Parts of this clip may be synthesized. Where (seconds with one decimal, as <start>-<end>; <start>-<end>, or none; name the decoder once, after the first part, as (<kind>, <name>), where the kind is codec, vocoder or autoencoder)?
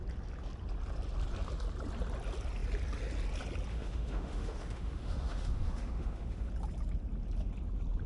3.7-6.5 (autoencoder, DAC-VAE)